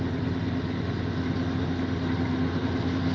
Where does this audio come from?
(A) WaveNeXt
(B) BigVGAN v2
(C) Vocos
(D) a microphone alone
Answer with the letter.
D